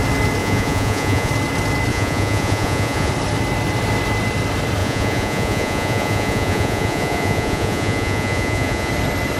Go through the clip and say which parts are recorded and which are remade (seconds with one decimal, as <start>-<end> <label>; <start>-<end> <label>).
0.0-0.4 recorded; 0.4-1.3 remade; 1.3-1.9 recorded; 1.9-3.1 remade; 3.1-4.8 recorded; 4.8-8.9 remade; 8.9-9.4 recorded